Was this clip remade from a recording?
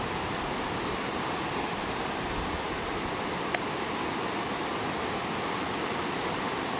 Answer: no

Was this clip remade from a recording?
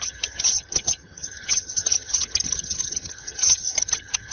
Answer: yes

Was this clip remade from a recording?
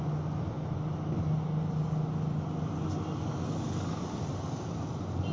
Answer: no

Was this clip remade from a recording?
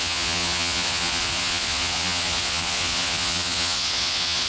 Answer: yes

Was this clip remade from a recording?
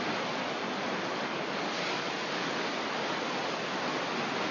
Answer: no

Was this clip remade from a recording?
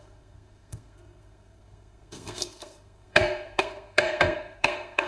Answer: yes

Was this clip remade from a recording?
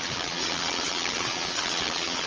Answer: yes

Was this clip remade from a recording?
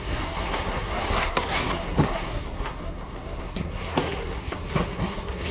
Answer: yes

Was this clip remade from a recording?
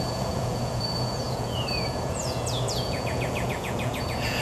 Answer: yes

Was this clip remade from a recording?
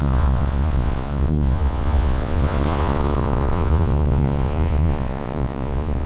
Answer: yes